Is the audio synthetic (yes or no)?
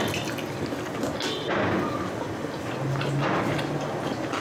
no